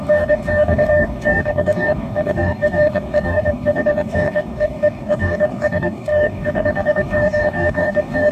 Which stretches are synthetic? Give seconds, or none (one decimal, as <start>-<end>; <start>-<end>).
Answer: 0.0-8.3